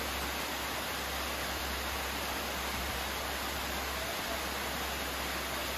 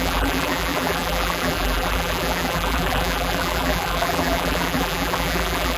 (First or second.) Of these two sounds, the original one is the first